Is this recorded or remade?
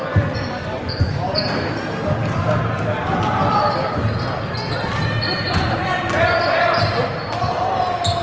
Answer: recorded